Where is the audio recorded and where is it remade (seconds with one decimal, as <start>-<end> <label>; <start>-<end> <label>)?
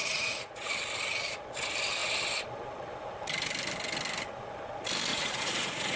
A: 0.0-0.7 remade; 0.7-5.1 recorded; 5.1-6.0 remade